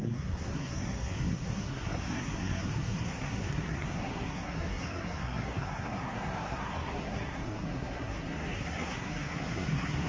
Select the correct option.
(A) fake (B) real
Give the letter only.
A